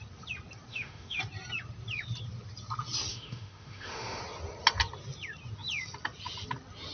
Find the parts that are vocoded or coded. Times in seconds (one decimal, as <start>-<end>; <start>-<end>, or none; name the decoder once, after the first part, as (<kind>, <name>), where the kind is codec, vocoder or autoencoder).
0.7-1.2 (autoencoder, DAC-VAE); 3.1-4.2

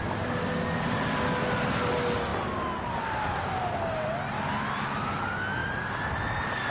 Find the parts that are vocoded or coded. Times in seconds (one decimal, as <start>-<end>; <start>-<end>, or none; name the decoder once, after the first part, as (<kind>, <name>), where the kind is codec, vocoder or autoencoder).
none

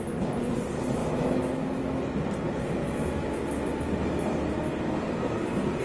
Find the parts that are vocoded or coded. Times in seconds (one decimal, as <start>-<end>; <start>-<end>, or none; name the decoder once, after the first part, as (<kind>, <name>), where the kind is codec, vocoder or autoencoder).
1.0-2.0 (autoencoder, DAC-VAE); 2.8-3.4

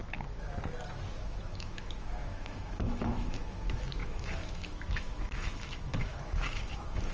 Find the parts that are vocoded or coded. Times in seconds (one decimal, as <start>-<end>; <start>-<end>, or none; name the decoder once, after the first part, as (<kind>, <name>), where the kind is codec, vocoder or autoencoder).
1.2-7.1 (autoencoder, DAC-VAE)

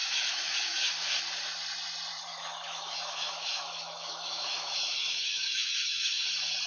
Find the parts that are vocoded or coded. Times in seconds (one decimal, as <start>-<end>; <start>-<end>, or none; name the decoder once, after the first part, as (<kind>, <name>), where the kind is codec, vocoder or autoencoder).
0.0-0.9 (autoencoder, DAC-VAE); 2.3-6.3

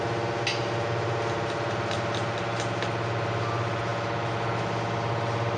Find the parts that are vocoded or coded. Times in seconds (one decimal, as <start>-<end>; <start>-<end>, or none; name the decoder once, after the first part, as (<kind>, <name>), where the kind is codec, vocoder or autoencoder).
none